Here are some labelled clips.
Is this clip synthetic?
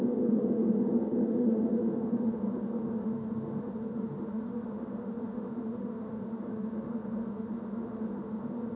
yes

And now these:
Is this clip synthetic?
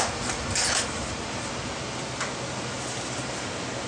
no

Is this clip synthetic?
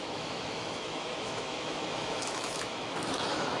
yes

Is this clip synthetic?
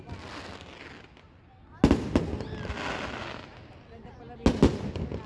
no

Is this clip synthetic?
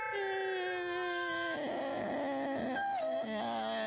no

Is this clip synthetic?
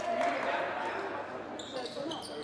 no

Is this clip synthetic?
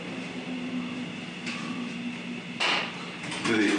no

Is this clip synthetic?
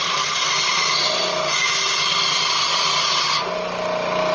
no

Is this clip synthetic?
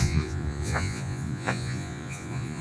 yes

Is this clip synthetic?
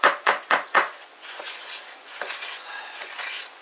yes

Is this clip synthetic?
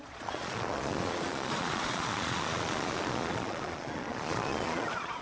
yes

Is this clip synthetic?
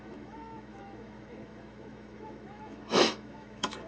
yes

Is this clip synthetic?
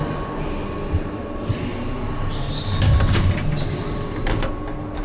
no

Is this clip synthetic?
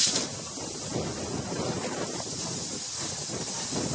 yes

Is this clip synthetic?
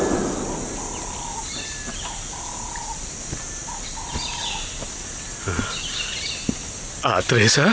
no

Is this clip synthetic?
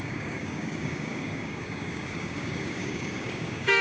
yes